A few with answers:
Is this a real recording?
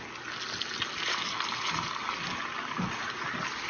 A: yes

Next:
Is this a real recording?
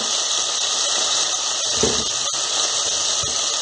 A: yes